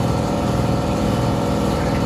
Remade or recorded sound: remade